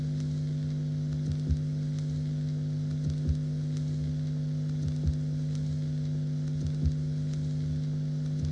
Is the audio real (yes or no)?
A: yes